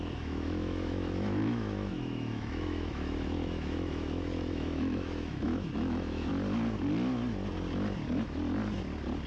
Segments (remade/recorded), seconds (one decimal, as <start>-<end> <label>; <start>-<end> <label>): 0.0-6.3 remade; 6.3-9.3 recorded